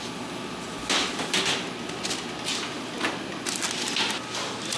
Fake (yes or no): no